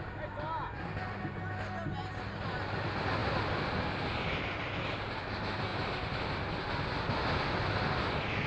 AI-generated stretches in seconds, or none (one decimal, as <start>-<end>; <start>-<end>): none